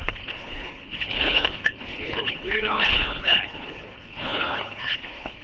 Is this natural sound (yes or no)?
no